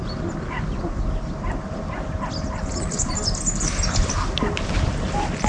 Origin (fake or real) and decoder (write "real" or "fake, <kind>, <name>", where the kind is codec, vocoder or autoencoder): real